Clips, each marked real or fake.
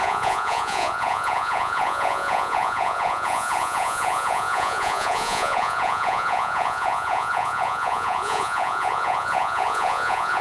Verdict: fake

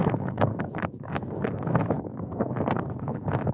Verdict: fake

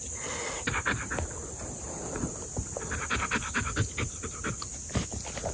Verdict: real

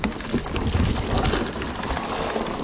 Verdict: real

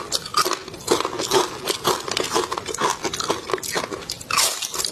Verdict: real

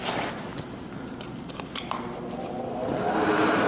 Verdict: real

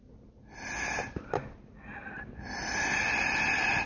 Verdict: real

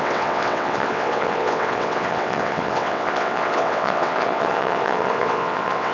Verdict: fake